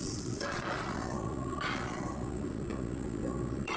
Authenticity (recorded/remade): remade